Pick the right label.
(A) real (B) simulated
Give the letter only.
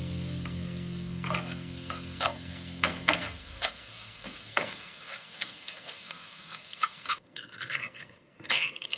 B